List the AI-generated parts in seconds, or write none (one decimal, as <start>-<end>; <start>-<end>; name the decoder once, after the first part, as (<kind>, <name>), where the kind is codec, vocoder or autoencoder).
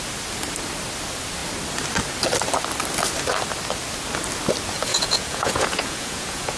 4.9-6.6 (vocoder, Vocos)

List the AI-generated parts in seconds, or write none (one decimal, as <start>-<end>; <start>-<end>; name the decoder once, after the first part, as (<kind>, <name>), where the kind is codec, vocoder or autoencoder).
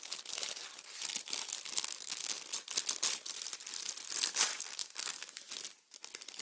1.8-2.4 (codec, DAC); 4.5-5.5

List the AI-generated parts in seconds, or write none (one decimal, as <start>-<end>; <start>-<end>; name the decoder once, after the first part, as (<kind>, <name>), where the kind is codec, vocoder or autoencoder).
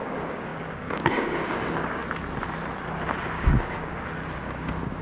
0.0-2.0 (codec, DAC); 3.3-3.9; 4.4-5.0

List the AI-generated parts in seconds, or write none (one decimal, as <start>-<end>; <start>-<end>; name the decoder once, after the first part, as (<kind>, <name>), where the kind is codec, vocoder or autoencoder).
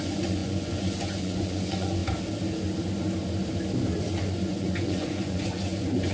0.0-2.0 (vocoder, Vocos); 4.2-6.1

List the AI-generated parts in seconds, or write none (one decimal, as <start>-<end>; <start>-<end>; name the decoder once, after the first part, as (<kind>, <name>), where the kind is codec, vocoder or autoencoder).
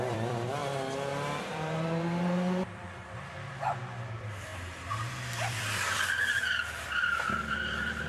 0.0-0.6 (vocoder, BigVGAN v2); 1.4-4.5; 5.5-8.1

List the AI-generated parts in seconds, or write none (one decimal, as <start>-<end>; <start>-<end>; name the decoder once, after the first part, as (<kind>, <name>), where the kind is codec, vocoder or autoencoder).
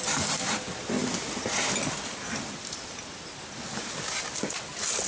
none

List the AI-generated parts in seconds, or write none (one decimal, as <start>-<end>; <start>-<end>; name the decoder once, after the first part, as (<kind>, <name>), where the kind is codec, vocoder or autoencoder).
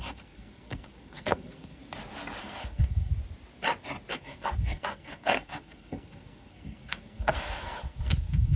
0.0-1.8 (codec, SNAC); 2.4-3.1; 4.1-8.6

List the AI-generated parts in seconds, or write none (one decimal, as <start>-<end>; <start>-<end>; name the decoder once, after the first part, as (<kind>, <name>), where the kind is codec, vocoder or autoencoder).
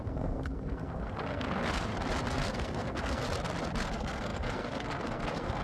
0.0-1.9 (codec, SNAC); 2.5-3.2; 3.8-5.6